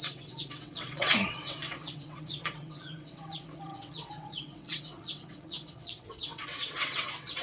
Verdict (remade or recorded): remade